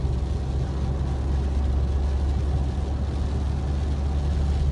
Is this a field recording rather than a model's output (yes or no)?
yes